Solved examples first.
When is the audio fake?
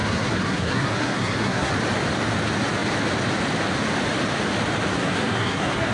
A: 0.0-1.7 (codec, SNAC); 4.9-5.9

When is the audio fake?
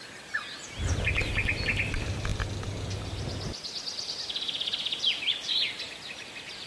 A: none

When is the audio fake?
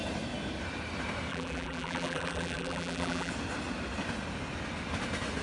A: 1.3-3.3 (vocoder, BigVGAN v2)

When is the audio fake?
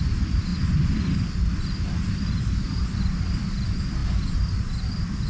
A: none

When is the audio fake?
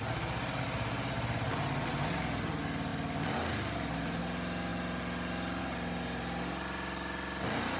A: none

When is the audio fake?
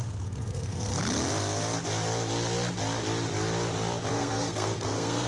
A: 0.0-0.9 (codec, SNAC); 4.1-5.3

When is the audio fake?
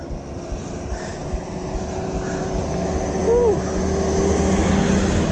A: none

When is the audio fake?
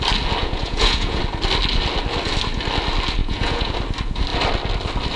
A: 0.4-1.2 (vocoder, Vocos); 3.2-3.7